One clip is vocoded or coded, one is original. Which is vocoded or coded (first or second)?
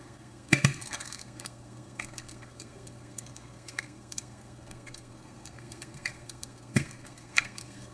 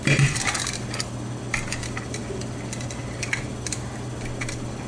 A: first